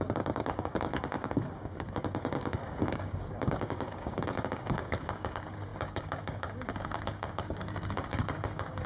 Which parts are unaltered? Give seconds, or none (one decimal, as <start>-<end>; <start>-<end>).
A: none